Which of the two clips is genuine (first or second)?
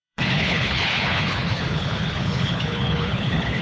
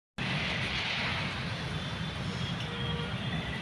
second